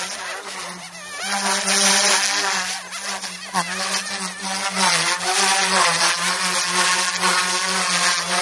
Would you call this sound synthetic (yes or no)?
no